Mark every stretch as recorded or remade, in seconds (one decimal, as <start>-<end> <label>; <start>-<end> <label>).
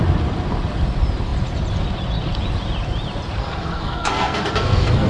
0.0-3.4 recorded; 3.4-5.1 remade